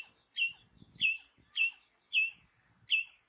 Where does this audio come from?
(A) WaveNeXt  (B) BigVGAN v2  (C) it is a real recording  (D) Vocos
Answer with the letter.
B